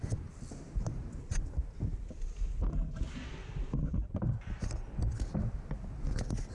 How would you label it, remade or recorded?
recorded